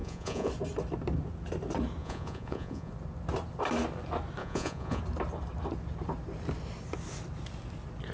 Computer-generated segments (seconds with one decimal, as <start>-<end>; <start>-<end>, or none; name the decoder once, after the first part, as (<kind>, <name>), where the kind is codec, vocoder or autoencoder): 0.0-0.5 (vocoder, Vocos); 2.0-2.9; 4.4-5.0